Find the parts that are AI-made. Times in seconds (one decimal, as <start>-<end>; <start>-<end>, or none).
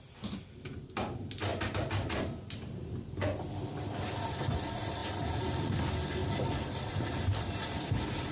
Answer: 1.5-3.0